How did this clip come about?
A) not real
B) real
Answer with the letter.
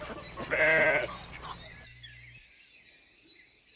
B